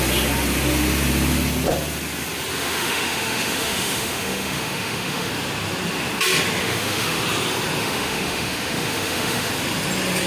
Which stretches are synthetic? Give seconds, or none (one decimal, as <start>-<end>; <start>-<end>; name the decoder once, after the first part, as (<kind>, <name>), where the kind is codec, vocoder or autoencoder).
2.6-5.3 (autoencoder, DAC-VAE); 6.6-7.2; 7.8-9.5